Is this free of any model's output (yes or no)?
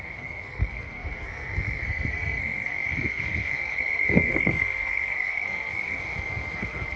no